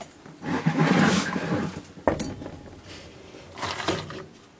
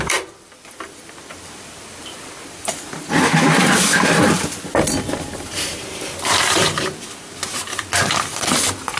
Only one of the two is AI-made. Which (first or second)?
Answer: second